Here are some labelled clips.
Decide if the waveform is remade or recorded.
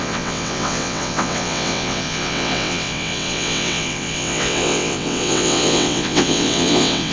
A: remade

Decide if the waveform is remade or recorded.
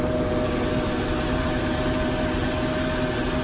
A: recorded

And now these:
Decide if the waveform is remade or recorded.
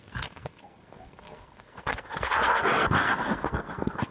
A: remade